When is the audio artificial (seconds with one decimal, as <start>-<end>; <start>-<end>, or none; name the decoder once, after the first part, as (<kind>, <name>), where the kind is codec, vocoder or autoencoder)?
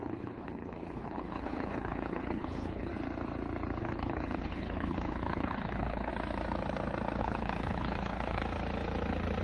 0.0-2.9 (codec, HILCodec); 3.8-6.1; 7.2-8.4